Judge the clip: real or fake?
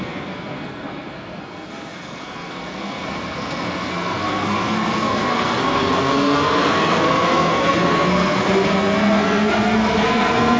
fake